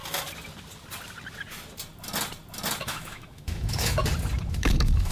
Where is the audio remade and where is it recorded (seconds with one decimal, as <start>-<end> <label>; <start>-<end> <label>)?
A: 0.0-2.8 recorded; 2.8-4.0 remade; 4.0-4.5 recorded; 4.5-5.1 remade